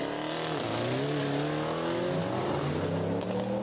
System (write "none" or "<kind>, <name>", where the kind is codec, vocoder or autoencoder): none